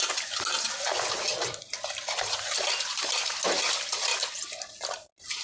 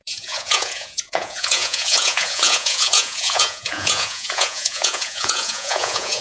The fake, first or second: second